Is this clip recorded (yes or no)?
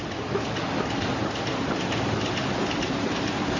yes